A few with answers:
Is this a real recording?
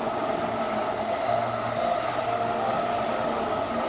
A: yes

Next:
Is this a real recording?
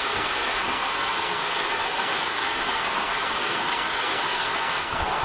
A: no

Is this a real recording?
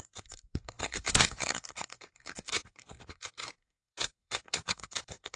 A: no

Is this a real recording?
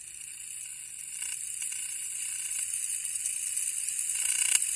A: yes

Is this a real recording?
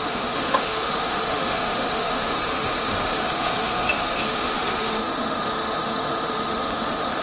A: no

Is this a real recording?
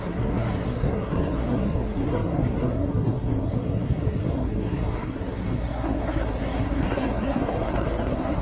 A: no